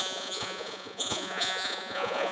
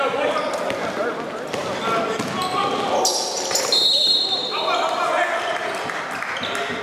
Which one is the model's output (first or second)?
first